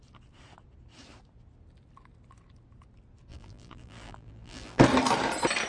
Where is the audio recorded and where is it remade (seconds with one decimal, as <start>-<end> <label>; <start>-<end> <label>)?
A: 0.0-3.3 recorded; 3.3-4.8 remade; 4.8-5.7 recorded